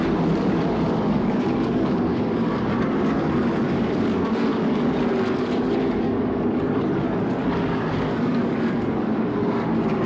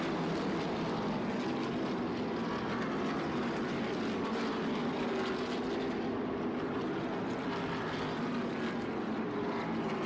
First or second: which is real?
second